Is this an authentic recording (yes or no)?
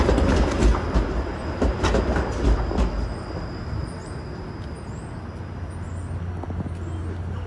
yes